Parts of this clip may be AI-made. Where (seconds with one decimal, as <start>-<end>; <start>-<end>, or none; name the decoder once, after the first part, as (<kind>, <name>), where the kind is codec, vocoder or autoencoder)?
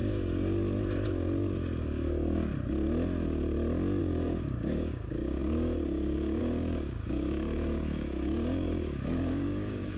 1.8-2.5 (codec, DAC); 4.0-10.0